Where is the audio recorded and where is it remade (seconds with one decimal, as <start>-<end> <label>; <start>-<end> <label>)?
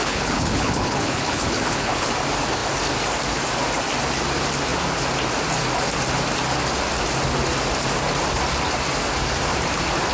0.0-2.1 remade; 2.1-10.1 recorded